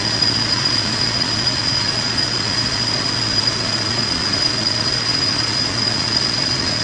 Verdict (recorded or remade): remade